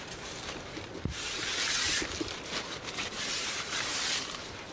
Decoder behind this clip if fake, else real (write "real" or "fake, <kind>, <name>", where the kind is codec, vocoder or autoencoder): fake, vocoder, BigVGAN v2